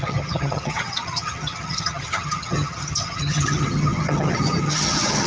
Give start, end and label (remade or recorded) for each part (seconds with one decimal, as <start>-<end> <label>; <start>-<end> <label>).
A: 0.0-5.3 remade